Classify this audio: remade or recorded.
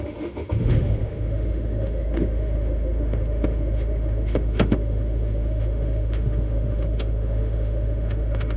remade